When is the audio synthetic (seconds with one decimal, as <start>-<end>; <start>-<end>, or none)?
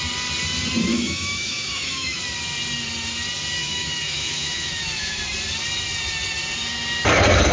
0.9-2.2; 3.6-5.2